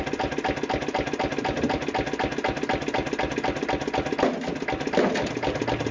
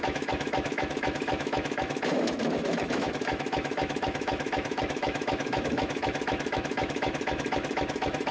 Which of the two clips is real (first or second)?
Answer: first